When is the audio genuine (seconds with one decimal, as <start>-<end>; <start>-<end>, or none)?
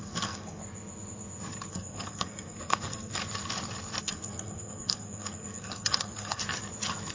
0.6-1.7; 3.2-4.0; 6.4-7.1